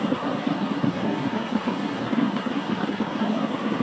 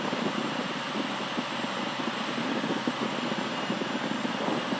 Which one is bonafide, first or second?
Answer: second